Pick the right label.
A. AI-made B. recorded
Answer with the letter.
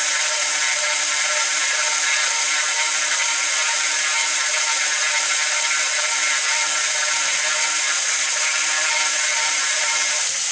A